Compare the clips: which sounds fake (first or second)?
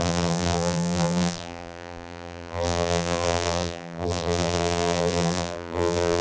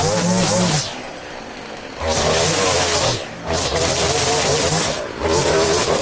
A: first